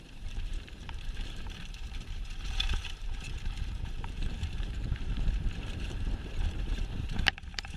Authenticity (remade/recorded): remade